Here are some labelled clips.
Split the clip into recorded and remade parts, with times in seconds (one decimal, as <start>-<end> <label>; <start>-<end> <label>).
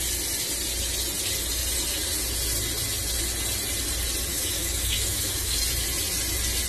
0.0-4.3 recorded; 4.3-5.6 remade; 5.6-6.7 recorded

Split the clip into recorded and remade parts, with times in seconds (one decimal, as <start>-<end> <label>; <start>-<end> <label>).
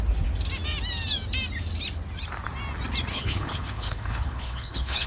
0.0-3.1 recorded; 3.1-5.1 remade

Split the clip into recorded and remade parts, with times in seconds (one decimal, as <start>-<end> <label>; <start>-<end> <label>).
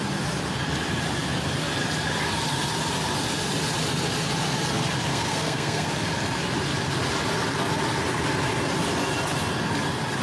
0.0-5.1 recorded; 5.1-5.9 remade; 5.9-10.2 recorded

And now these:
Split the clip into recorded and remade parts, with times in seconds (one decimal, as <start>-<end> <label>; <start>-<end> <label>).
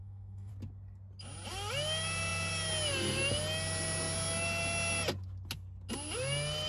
0.0-0.5 remade; 0.5-6.7 recorded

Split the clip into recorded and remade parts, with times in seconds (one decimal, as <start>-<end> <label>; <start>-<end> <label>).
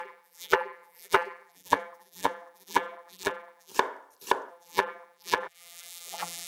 0.0-3.7 remade; 3.7-4.5 recorded; 4.5-6.5 remade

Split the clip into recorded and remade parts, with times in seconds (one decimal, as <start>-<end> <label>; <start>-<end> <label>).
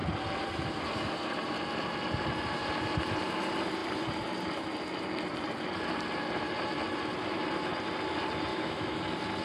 0.0-8.5 recorded; 8.5-9.0 remade; 9.0-9.4 recorded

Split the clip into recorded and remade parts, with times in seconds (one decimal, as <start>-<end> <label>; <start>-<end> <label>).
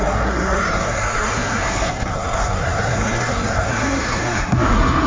0.0-5.1 remade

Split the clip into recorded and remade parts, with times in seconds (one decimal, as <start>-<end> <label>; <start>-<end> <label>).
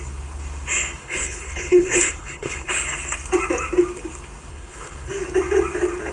0.0-1.0 recorded; 1.0-2.7 remade; 2.7-4.5 recorded; 4.5-5.1 remade; 5.1-6.1 recorded